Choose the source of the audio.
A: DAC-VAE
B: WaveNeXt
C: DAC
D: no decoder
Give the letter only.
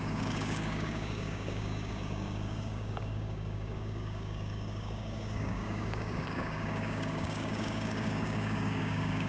C